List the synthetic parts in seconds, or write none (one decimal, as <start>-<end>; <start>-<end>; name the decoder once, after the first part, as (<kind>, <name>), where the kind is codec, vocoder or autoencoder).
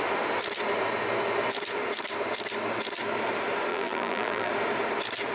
3.7-4.5 (vocoder, BigVGAN v2)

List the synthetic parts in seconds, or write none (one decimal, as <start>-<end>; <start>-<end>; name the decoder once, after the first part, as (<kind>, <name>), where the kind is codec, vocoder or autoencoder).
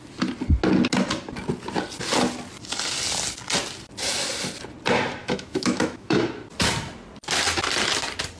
5.2-6.2 (autoencoder, DAC-VAE)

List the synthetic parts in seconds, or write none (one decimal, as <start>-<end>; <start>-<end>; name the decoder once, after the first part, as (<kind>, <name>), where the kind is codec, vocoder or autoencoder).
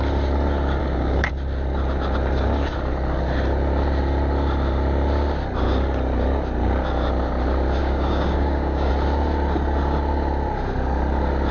0.8-1.3 (codec, DAC); 7.8-8.9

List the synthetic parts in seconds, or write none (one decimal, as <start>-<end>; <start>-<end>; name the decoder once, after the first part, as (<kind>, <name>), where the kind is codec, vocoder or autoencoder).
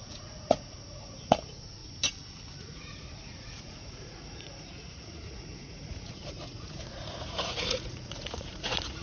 0.0-1.8 (vocoder, Vocos); 2.6-9.0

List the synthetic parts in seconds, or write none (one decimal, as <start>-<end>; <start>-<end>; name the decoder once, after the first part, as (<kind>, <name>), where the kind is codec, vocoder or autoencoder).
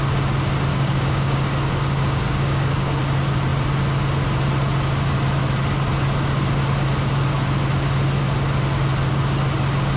0.7-3.0 (codec, DAC)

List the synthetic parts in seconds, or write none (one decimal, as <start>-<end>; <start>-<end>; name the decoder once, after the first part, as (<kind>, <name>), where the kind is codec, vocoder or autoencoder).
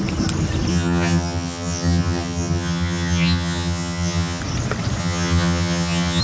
0.7-4.4 (vocoder, HiFi-GAN); 5.0-6.2